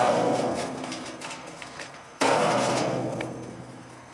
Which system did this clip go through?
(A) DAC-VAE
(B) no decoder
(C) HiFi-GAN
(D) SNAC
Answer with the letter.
D